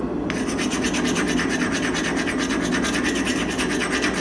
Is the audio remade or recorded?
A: recorded